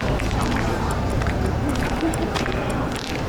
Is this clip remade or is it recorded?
remade